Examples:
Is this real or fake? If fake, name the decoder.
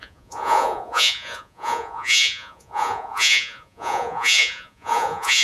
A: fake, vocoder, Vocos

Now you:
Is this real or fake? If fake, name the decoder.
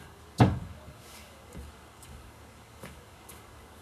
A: fake, codec, DAC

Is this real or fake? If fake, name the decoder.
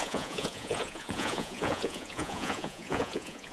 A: fake, vocoder, Vocos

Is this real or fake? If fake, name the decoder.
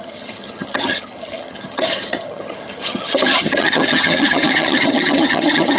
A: fake, vocoder, HiFi-GAN